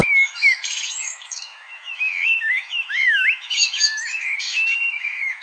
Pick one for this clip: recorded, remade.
remade